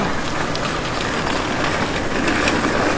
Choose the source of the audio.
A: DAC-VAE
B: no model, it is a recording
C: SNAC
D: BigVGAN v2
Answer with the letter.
B